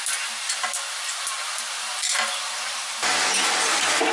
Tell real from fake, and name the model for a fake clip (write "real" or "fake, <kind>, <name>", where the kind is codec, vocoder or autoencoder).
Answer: real